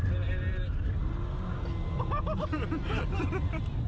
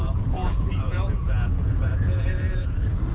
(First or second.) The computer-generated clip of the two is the second